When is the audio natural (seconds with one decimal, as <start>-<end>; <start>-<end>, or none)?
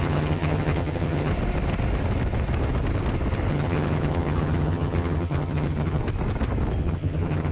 1.3-3.5; 6.0-6.8